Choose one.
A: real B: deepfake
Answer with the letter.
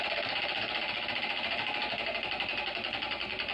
B